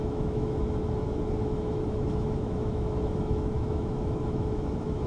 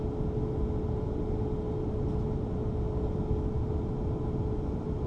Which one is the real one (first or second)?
second